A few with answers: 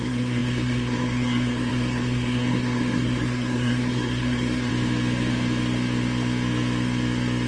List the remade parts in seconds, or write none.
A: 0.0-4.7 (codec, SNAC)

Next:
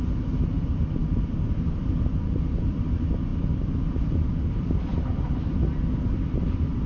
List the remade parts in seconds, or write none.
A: none

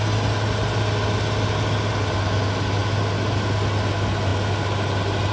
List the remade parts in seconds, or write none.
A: none

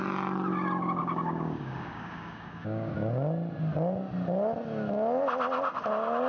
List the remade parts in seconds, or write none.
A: 1.0-2.9 (codec, DAC)

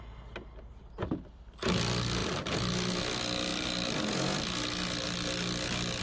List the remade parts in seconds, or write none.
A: none

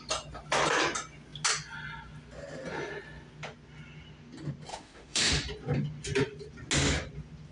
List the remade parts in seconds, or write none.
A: 4.7-5.3 (autoencoder, DAC-VAE)

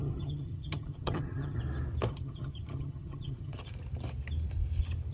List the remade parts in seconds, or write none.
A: 0.0-1.6 (vocoder, HiFi-GAN); 2.1-3.6